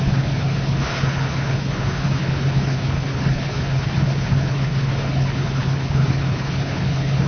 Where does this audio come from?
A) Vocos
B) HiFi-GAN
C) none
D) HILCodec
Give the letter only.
D